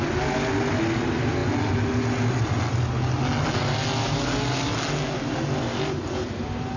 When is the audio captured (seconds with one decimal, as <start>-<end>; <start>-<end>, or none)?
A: 0.0-6.8